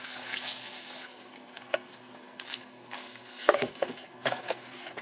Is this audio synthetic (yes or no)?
yes